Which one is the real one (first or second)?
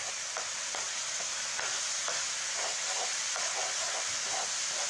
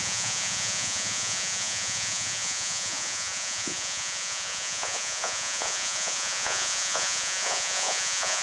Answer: first